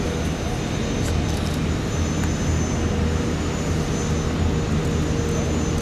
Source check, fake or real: real